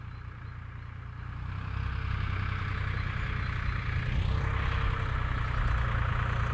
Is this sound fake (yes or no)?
no